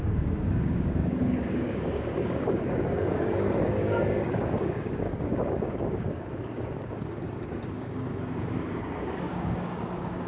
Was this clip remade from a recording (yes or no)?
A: yes